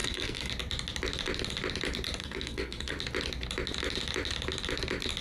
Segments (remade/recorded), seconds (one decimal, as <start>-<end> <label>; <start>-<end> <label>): 0.0-0.5 remade; 0.5-2.2 recorded; 2.2-2.9 remade; 2.9-5.2 recorded